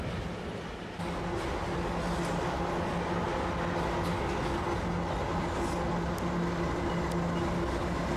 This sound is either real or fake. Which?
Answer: real